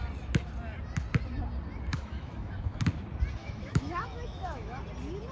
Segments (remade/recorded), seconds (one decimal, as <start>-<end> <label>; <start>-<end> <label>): 0.0-1.9 recorded; 1.9-2.8 remade; 2.8-3.4 recorded; 3.4-4.8 remade; 4.8-5.3 recorded